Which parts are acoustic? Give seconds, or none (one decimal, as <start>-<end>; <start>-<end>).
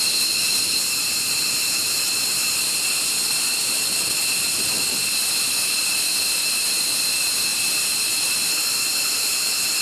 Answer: 0.0-9.8